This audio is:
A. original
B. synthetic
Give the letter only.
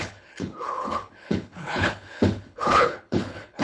B